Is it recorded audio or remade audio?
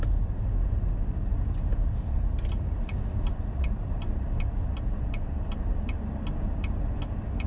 recorded